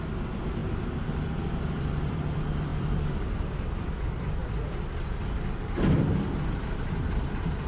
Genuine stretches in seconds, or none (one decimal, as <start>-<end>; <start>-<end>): none